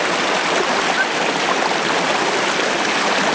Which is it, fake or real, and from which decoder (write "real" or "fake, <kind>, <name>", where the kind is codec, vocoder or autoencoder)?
real